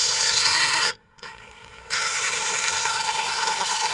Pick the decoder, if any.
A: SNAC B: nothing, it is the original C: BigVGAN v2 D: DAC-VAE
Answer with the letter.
A